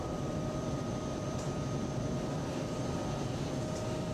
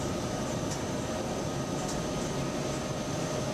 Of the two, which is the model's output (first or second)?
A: first